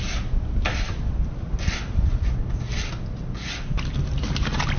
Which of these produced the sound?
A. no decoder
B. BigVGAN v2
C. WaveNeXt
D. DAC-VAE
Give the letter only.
A